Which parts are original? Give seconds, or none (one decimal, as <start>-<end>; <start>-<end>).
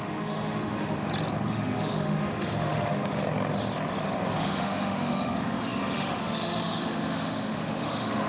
1.0-1.5; 3.2-4.4